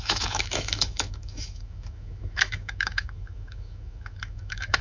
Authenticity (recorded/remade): remade